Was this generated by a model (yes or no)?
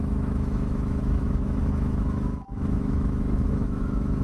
yes